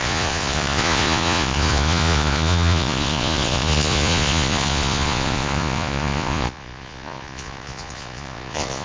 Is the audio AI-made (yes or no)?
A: yes